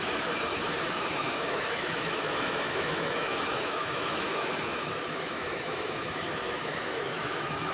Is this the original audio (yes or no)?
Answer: no